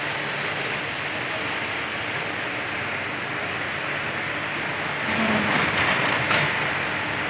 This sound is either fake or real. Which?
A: real